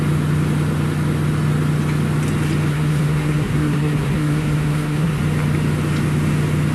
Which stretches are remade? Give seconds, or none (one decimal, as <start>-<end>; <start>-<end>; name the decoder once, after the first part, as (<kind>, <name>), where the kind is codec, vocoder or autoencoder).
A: 2.7-5.2 (codec, SNAC)